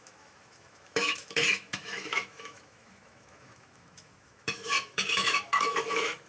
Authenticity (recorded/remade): remade